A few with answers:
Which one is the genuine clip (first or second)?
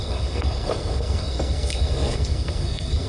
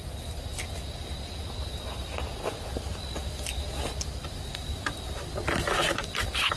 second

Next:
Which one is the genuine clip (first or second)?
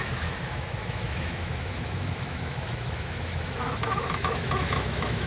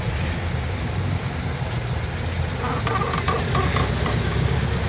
second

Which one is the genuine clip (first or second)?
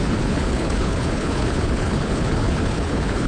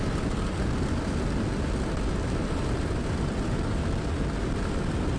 second